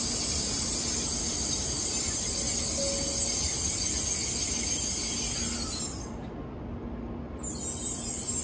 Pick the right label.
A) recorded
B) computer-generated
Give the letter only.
A